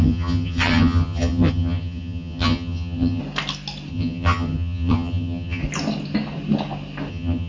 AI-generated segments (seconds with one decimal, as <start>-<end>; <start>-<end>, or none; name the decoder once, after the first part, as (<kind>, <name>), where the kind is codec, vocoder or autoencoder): 0.0-3.2 (vocoder, HiFi-GAN); 3.9-5.6; 7.1-7.5